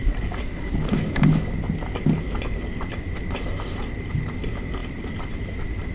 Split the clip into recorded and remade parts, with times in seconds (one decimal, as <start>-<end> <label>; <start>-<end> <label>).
0.0-1.5 remade; 1.5-5.9 recorded